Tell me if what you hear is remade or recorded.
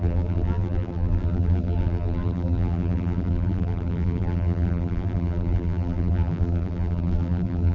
remade